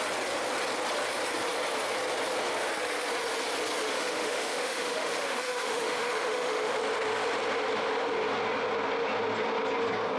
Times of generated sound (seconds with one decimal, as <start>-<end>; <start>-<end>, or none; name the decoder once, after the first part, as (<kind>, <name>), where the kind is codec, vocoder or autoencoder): 3.9-6.8 (autoencoder, DAC-VAE)